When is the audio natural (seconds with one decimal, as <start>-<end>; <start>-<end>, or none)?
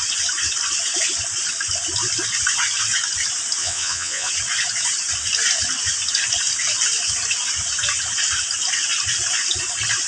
0.0-3.6; 4.3-10.1